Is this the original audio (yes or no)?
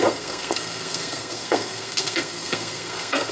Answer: no